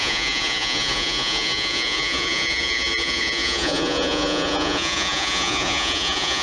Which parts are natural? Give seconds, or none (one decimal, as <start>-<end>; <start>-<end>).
none